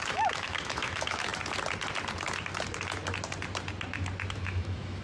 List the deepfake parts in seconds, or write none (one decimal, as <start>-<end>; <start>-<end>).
0.0-1.3; 4.3-5.0